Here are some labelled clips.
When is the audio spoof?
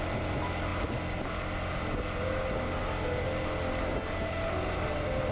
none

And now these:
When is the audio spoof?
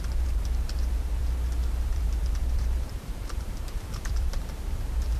0.0-1.2; 1.9-5.2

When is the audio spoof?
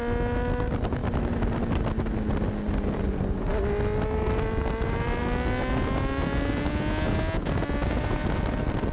none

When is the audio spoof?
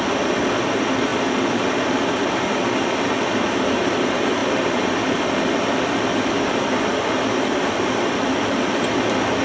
0.0-1.1; 3.3-9.4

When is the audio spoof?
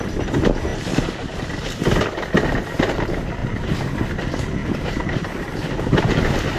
0.7-1.4; 3.4-3.9; 4.6-5.7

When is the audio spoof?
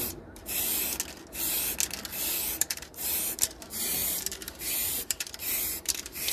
0.0-0.4; 2.5-6.3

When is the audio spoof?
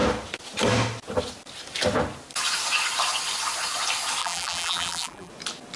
4.2-5.3